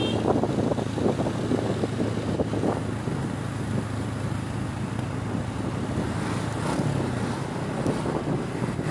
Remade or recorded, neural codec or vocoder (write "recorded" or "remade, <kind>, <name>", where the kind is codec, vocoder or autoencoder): recorded